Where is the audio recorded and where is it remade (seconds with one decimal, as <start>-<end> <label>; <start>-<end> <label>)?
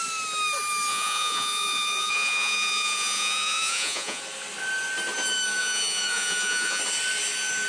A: 0.0-0.9 recorded; 0.9-4.2 remade; 4.2-5.6 recorded; 5.6-6.8 remade; 6.8-7.7 recorded